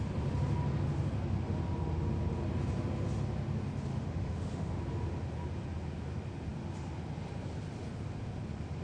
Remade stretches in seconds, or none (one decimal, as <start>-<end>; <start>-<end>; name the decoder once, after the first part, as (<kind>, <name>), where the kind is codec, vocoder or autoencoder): 3.9-4.8 (autoencoder, DAC-VAE)